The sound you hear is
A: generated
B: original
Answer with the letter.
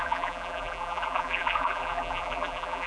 A